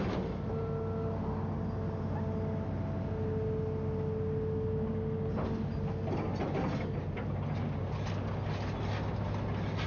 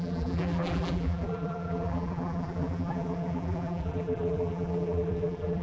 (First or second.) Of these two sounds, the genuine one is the first